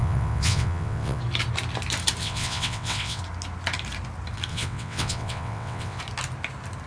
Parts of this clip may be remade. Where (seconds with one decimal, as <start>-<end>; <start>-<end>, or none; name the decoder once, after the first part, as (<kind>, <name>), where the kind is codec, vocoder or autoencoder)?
0.0-1.2 (vocoder, WaveNeXt); 2.2-3.2; 4.5-6.0